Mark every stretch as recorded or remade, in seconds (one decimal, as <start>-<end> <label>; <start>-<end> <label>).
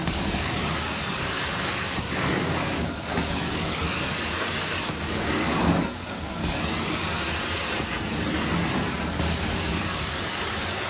0.0-6.4 remade; 6.4-9.0 recorded; 9.0-10.9 remade